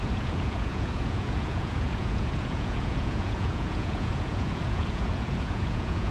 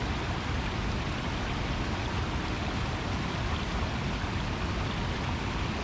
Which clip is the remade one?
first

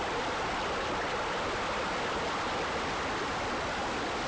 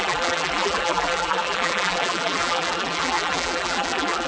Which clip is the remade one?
second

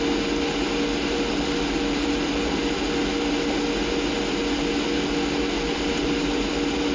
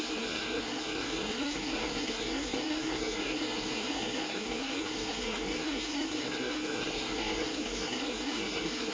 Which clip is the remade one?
second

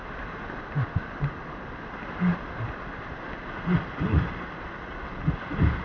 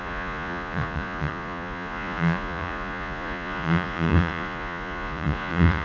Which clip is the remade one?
second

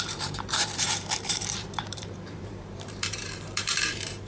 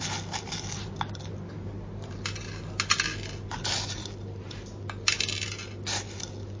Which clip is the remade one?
first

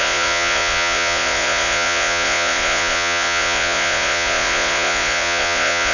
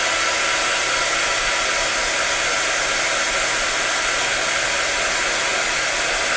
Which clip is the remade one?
first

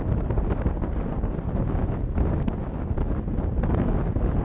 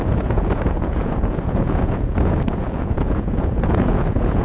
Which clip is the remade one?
second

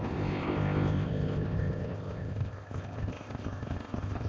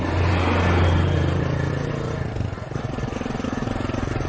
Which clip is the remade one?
first